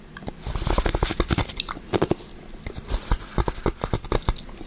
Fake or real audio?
real